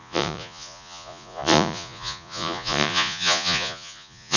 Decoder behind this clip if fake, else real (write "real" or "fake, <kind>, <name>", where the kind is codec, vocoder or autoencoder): fake, vocoder, Vocos